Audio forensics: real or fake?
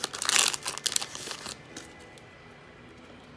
real